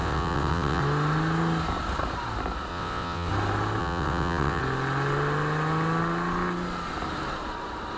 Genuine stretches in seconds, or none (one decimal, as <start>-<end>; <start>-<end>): 0.8-2.7; 3.3-3.8; 4.6-8.0